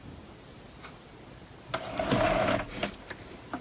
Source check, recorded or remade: recorded